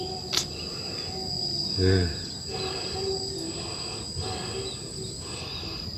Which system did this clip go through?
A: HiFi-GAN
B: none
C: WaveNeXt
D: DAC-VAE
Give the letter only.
B